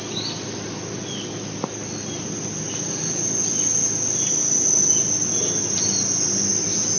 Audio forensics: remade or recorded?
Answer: recorded